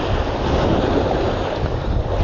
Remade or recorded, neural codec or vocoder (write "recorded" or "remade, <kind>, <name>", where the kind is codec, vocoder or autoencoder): recorded